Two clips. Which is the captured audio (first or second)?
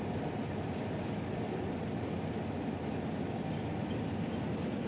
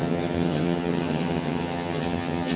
first